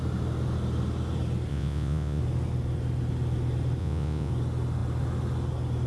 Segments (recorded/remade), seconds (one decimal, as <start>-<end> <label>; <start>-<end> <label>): 0.0-1.5 recorded; 1.5-2.2 remade; 2.2-3.8 recorded; 3.8-4.3 remade; 4.3-5.9 recorded